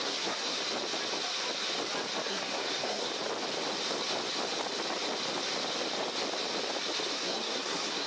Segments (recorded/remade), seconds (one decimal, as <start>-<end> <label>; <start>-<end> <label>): 0.0-0.6 remade; 0.6-2.3 recorded; 2.3-3.1 remade; 3.1-7.1 recorded; 7.1-8.1 remade